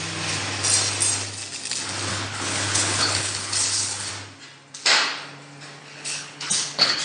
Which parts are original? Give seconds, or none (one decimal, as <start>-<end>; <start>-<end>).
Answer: 0.0-2.1; 4.1-5.8